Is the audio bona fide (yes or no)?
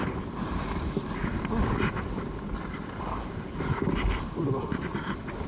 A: yes